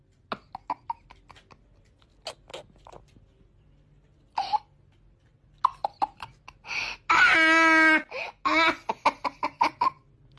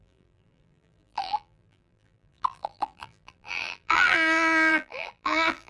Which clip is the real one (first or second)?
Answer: first